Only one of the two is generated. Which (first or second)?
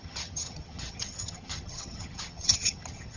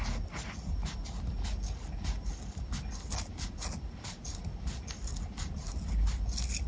first